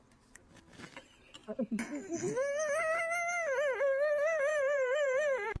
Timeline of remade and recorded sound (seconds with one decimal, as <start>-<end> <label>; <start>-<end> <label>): 0.0-4.5 recorded; 4.5-5.6 remade